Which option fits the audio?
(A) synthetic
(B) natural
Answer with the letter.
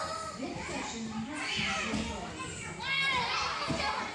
B